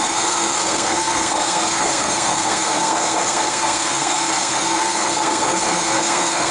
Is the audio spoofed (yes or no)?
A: yes